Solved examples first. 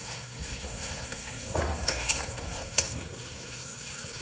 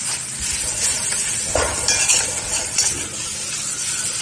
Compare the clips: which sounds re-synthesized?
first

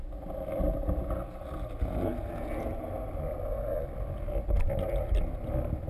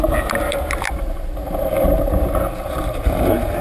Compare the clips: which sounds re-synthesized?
second